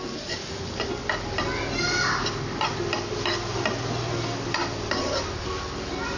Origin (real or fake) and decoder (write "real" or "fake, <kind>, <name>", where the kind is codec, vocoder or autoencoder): real